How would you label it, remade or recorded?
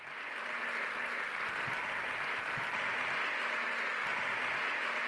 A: recorded